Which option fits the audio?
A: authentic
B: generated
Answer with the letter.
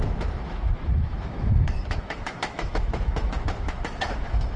B